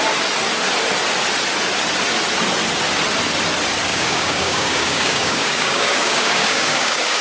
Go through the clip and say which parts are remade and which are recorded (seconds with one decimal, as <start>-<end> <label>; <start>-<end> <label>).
0.0-3.9 recorded; 3.9-7.2 remade